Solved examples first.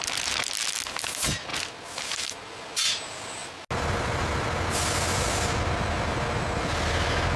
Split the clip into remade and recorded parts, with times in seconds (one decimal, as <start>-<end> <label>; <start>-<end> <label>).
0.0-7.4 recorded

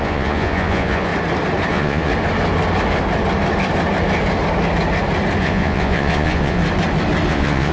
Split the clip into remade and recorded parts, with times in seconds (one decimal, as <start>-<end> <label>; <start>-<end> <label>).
0.0-1.1 remade; 1.1-1.7 recorded; 1.7-2.1 remade; 2.1-5.4 recorded; 5.4-6.6 remade; 6.6-7.3 recorded; 7.3-7.7 remade

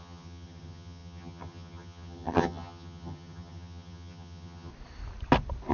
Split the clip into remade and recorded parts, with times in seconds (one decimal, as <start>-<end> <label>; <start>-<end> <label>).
0.0-4.7 remade; 4.7-5.7 recorded